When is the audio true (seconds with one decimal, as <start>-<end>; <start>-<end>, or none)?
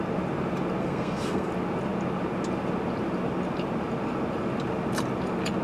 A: 0.0-0.8; 1.5-5.6